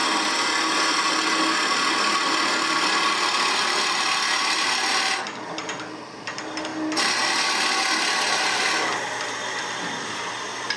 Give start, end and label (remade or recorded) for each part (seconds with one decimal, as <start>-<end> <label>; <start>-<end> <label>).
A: 0.0-10.8 recorded